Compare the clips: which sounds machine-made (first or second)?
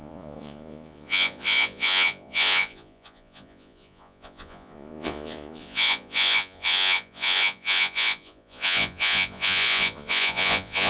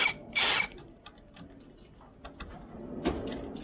first